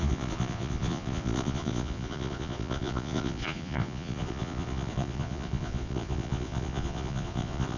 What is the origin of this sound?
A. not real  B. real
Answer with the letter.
A